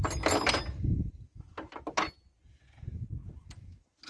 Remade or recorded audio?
recorded